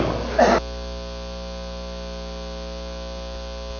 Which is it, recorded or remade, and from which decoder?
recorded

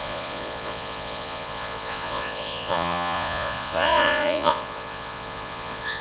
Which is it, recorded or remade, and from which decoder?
remade, vocoder, Vocos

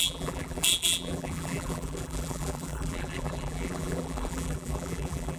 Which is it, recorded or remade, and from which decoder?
remade, vocoder, BigVGAN v2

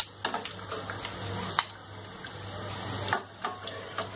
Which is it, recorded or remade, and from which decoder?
recorded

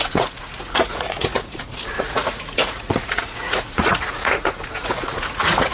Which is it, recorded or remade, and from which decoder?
remade, vocoder, Vocos